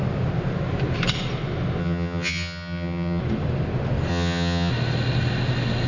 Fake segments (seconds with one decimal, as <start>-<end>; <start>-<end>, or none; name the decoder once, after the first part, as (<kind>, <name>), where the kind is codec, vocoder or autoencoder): 1.8-3.2 (vocoder, HiFi-GAN); 4.1-4.7